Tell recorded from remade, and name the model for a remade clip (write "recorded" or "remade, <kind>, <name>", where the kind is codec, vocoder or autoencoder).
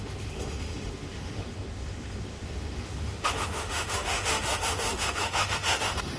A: remade, autoencoder, DAC-VAE